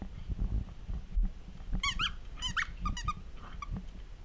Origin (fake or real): real